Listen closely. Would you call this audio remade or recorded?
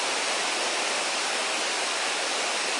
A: recorded